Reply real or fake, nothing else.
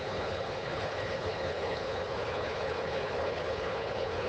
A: fake